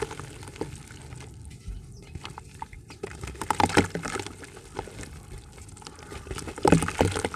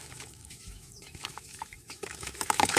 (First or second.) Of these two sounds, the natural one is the first